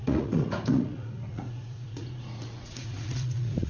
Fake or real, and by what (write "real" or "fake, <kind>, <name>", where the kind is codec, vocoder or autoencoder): fake, vocoder, Vocos